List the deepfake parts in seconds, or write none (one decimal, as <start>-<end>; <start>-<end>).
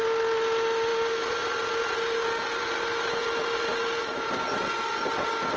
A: none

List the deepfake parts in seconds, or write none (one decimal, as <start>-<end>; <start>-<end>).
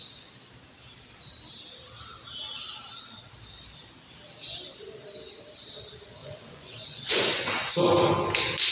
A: 6.2-7.8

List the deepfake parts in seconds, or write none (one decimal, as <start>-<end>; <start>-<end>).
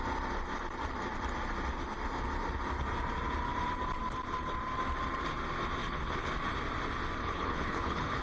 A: 5.8-6.3; 7.2-8.2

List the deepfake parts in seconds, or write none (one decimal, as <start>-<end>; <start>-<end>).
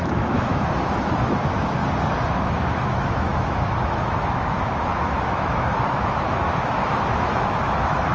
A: 0.0-1.8; 2.3-8.1